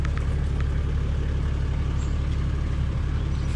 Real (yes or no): yes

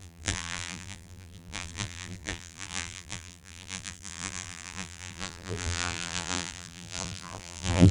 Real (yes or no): no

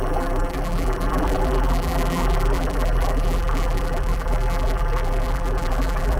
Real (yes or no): no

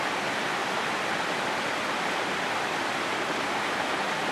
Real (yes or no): no